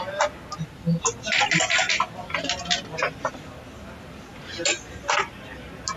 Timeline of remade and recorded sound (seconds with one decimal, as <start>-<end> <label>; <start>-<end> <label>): 0.0-6.0 recorded